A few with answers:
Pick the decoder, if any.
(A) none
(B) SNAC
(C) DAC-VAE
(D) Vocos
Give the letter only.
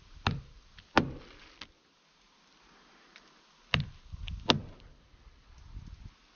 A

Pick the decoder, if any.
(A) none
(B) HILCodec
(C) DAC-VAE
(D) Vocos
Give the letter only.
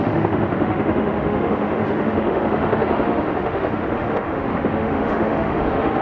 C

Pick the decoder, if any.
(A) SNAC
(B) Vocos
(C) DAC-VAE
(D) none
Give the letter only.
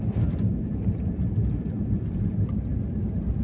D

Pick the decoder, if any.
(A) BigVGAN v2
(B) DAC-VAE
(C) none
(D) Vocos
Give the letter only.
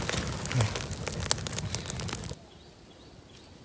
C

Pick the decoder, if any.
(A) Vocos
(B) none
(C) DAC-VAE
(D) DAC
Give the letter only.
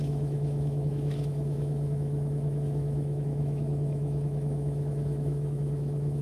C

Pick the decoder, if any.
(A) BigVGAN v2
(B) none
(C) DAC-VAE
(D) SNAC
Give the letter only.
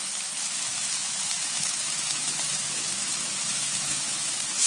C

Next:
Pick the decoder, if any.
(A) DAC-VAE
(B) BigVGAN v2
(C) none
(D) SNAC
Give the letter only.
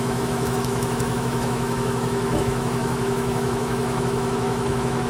A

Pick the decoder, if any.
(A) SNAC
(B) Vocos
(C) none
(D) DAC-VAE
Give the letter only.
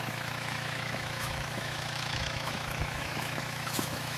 D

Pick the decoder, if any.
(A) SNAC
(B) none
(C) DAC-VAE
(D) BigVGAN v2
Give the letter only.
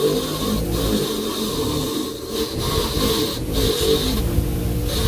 B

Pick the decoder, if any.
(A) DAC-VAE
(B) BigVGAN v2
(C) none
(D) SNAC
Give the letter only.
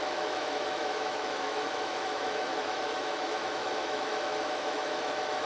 A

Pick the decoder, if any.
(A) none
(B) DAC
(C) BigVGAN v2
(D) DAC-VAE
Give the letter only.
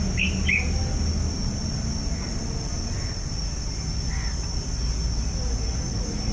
A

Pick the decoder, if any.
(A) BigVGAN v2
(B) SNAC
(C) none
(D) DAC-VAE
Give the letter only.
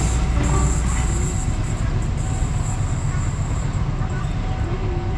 C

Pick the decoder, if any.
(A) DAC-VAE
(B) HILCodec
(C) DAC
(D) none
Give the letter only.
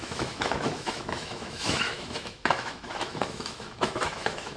A